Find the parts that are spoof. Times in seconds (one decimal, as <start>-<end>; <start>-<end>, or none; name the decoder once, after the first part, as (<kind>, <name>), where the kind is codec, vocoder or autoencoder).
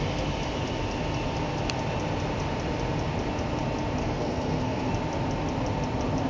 4.0-4.9 (codec, SNAC)